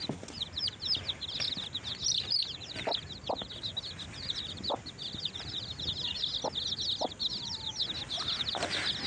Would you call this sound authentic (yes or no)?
yes